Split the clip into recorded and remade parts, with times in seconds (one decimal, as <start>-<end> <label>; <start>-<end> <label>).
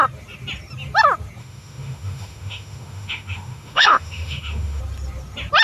0.0-1.4 recorded; 1.4-4.8 remade; 4.8-5.6 recorded